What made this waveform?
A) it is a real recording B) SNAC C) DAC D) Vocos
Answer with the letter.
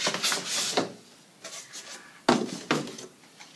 A